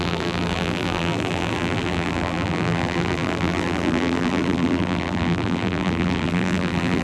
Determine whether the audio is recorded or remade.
remade